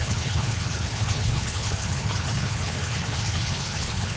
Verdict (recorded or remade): remade